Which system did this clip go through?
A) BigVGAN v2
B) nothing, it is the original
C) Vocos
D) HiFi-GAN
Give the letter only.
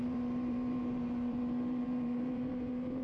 A